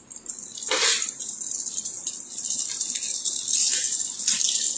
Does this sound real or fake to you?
real